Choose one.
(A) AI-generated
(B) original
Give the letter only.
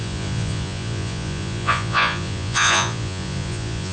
A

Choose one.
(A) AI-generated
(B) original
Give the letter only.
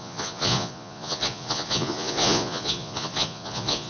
A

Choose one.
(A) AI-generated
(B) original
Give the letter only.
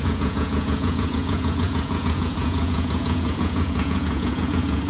A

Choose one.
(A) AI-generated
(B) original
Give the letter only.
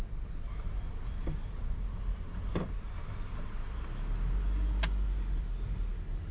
B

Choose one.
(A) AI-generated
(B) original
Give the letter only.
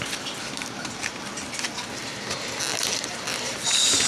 B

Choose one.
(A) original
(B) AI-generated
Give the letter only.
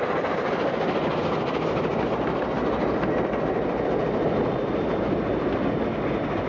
A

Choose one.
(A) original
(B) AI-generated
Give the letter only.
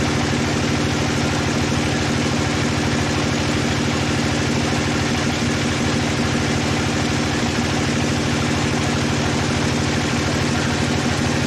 A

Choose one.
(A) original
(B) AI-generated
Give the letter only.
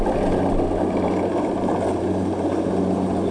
A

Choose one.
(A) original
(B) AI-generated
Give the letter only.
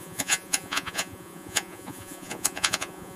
B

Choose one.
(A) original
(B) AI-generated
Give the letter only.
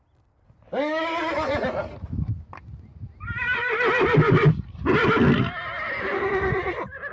A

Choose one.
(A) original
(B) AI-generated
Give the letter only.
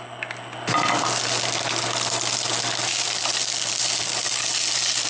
A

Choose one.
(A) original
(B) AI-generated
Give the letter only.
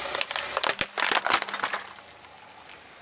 A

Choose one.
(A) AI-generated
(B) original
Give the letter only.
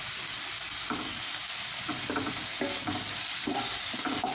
B